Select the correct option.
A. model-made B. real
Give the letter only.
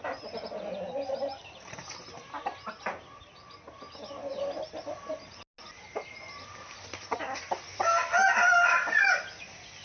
B